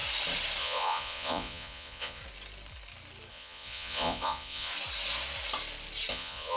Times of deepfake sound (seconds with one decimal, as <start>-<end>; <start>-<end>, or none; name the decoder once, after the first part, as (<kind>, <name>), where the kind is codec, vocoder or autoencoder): 0.6-2.2 (vocoder, Vocos); 3.3-4.7; 6.1-6.6